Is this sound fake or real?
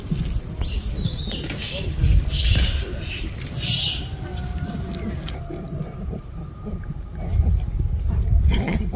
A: real